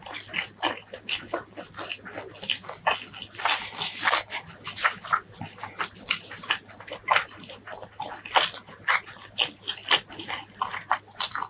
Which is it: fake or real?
real